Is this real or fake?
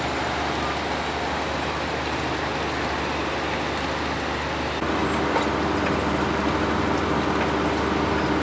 real